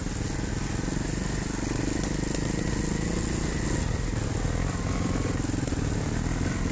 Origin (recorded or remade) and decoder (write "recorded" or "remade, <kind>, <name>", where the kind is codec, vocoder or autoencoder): recorded